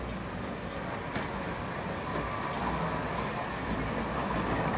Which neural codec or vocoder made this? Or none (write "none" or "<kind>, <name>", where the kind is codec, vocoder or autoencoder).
none